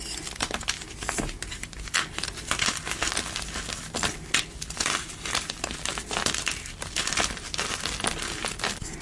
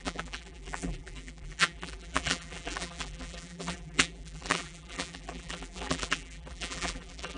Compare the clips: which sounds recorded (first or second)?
first